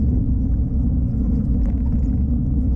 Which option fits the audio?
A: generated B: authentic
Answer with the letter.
B